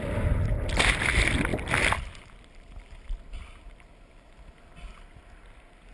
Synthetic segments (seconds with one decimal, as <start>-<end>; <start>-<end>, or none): none